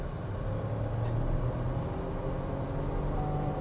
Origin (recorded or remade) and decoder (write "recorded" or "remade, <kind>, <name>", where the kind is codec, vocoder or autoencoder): recorded